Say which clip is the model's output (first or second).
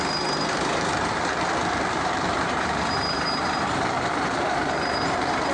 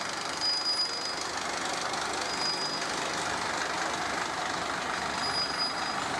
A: first